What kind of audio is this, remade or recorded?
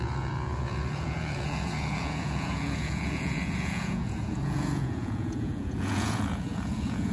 remade